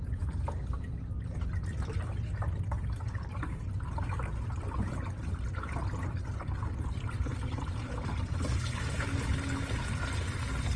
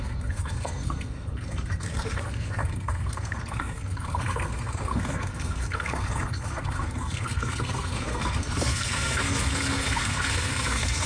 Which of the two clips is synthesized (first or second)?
second